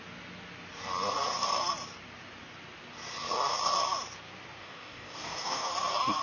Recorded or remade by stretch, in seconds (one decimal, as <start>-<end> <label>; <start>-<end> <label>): 0.0-4.6 recorded; 4.6-5.7 remade; 5.7-6.2 recorded